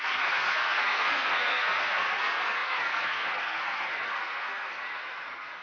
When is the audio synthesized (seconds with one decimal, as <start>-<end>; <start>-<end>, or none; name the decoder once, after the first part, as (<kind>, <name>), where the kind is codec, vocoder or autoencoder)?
0.0-5.6 (codec, SNAC)